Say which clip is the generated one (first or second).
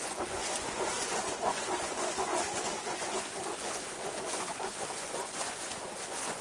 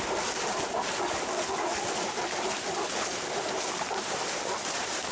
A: first